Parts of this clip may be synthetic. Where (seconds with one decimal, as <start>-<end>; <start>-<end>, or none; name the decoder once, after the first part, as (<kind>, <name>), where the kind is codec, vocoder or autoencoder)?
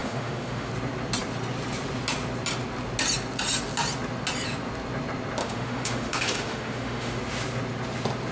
0.0-0.7 (autoencoder, DAC-VAE); 5.4-7.2